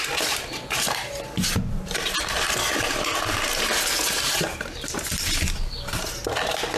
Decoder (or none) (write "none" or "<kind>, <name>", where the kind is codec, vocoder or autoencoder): none